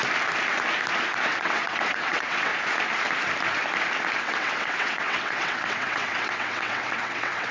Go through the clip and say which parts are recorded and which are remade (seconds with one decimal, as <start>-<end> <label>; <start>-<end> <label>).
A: 0.0-1.3 recorded; 1.3-2.5 remade; 2.5-4.2 recorded; 4.2-7.5 remade